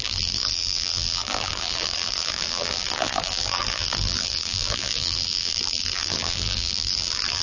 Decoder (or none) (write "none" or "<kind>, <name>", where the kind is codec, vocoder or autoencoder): vocoder, BigVGAN v2